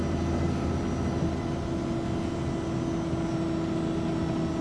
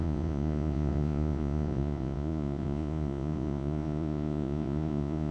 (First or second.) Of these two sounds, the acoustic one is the first